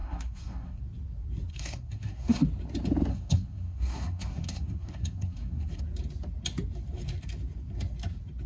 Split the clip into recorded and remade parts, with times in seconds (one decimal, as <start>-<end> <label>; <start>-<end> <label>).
0.0-0.8 remade; 0.8-1.5 recorded; 1.5-2.4 remade; 2.4-3.1 recorded; 3.1-5.8 remade; 5.8-8.5 recorded